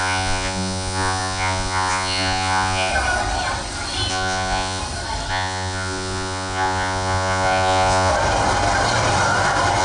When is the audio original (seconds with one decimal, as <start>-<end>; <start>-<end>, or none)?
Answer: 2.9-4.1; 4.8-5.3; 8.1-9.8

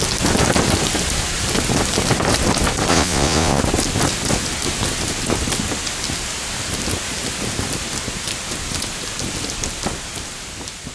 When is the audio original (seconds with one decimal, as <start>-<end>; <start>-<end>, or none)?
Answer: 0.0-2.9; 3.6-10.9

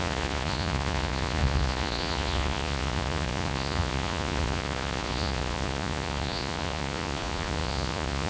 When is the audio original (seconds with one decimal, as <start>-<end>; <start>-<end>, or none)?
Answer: none

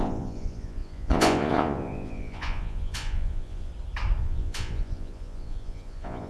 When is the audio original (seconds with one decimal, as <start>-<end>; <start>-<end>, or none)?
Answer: 3.7-4.2

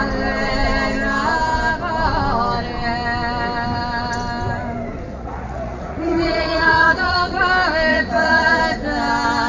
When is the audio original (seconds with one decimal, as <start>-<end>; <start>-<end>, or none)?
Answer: 0.0-5.1; 7.4-7.9; 8.6-9.5